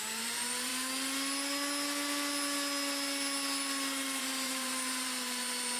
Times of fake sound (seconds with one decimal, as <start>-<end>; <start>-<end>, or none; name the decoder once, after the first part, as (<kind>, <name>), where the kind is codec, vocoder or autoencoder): 0.0-0.7 (vocoder, BigVGAN v2); 4.2-5.8